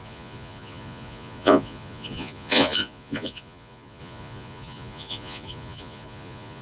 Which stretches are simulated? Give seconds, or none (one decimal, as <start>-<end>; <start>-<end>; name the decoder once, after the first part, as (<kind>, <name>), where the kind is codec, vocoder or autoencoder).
0.0-6.6 (vocoder, Vocos)